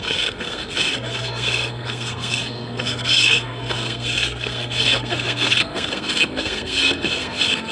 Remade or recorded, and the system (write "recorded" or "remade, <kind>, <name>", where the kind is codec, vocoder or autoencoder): remade, codec, SNAC